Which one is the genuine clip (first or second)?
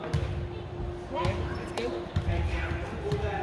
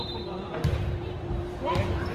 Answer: first